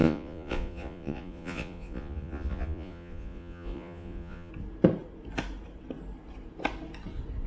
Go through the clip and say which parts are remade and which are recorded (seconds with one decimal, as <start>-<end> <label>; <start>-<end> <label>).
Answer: 0.0-4.5 remade; 4.5-7.5 recorded